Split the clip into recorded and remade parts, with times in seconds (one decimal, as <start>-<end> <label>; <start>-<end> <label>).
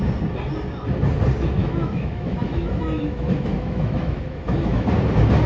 0.0-1.6 recorded; 1.6-4.9 remade; 4.9-5.5 recorded